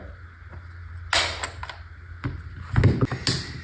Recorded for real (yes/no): yes